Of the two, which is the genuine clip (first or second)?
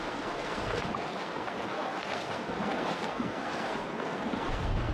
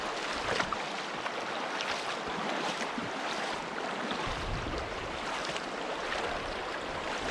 second